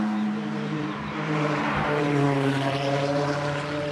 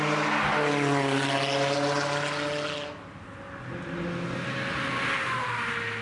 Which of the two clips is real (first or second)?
second